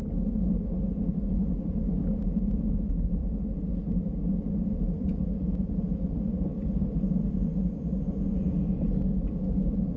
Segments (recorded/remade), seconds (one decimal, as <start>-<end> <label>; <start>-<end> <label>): 0.0-10.0 recorded